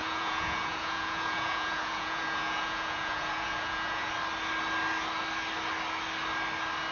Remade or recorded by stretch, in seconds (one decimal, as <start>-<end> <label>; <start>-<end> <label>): 0.0-4.1 remade; 4.1-6.9 recorded